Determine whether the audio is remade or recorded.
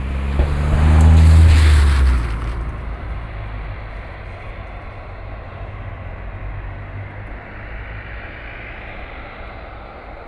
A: recorded